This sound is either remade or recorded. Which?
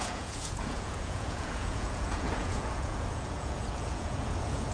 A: remade